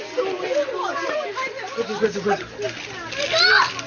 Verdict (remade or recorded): recorded